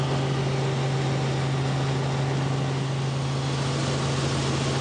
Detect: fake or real real